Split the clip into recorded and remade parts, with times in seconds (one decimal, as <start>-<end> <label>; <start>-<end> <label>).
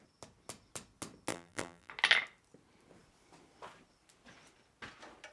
0.0-1.3 recorded; 1.3-1.9 remade; 1.9-5.3 recorded